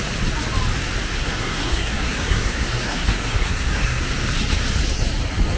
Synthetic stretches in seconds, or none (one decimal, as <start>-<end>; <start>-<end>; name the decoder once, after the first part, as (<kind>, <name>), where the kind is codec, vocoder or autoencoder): 1.2-4.1 (codec, SNAC)